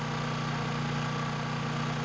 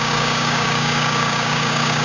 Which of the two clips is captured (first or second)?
first